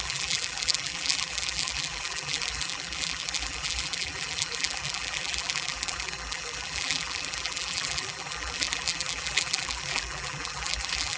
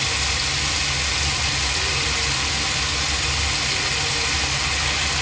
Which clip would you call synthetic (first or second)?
first